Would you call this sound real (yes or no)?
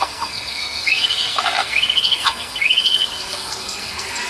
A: no